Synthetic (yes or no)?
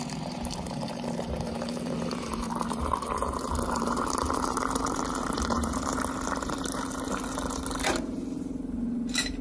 yes